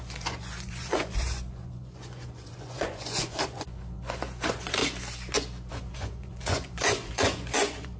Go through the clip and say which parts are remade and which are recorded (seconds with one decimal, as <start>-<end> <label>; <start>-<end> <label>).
0.0-4.8 remade; 4.8-5.7 recorded; 5.7-8.0 remade